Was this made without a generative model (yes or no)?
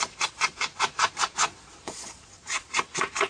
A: no